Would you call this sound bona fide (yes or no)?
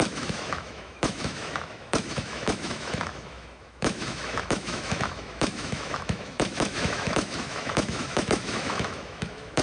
no